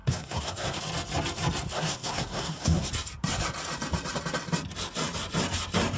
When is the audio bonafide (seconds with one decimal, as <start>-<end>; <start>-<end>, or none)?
0.8-1.7; 2.9-6.0